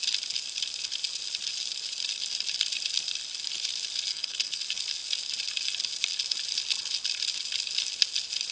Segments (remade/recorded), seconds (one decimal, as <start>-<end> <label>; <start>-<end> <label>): 0.0-4.1 recorded; 4.1-4.6 remade; 4.6-8.5 recorded